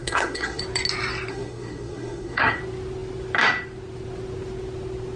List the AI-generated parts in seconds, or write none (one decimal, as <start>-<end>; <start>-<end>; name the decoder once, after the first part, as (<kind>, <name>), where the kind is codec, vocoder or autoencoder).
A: 0.0-0.6 (codec, SNAC); 1.3-2.6